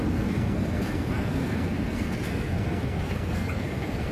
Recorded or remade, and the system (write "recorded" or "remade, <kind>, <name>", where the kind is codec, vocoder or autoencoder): remade, codec, SNAC